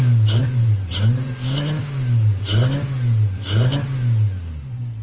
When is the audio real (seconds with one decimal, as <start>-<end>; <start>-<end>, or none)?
0.0-0.4; 1.3-5.0